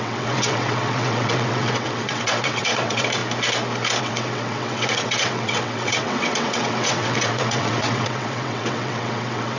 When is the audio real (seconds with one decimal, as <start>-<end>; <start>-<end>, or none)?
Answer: 3.2-4.0